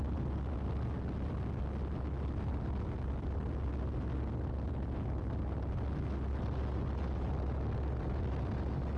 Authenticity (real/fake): real